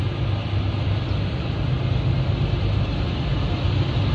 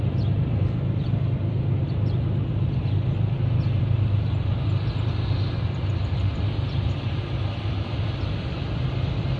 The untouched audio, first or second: first